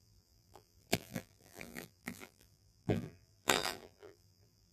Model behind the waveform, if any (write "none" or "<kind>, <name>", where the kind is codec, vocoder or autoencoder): vocoder, BigVGAN v2